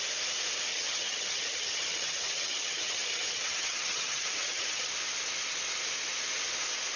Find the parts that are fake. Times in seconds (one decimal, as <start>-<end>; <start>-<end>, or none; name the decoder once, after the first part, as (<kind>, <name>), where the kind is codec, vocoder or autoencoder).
0.7-4.9 (vocoder, HiFi-GAN)